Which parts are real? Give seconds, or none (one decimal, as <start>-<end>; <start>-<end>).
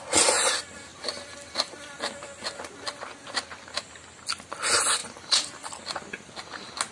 0.0-0.9; 2.0-5.0; 5.8-6.9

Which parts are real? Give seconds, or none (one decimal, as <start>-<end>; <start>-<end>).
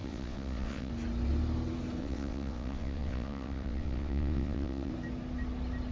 0.9-2.0; 4.9-5.9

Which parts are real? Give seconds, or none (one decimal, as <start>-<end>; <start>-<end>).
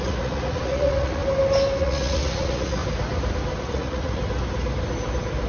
1.2-1.8; 2.8-3.6; 4.2-5.5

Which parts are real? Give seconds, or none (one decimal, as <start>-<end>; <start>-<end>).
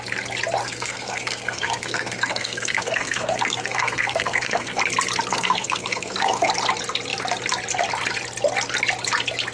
0.0-0.6; 4.8-5.3; 6.5-9.5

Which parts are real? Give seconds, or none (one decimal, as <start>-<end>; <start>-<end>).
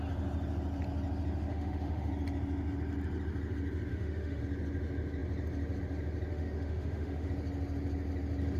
0.0-1.5; 2.1-3.9; 4.4-6.3; 7.3-8.6